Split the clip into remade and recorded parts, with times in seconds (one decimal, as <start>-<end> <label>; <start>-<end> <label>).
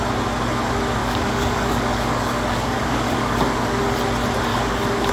0.0-1.0 recorded; 1.0-3.8 remade; 3.8-4.5 recorded; 4.5-5.1 remade